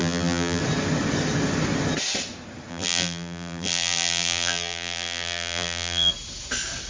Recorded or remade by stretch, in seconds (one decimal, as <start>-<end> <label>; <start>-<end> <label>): 0.0-0.6 remade; 0.6-2.7 recorded; 2.7-6.1 remade; 6.1-6.9 recorded